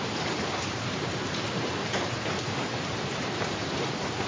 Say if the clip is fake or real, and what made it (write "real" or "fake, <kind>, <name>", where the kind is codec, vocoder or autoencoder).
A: fake, vocoder, BigVGAN v2